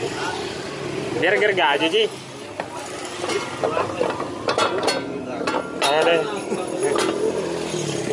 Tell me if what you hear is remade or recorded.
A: recorded